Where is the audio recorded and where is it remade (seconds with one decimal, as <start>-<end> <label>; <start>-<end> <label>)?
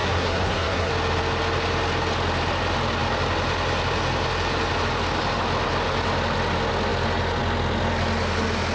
0.0-0.9 remade; 0.9-8.7 recorded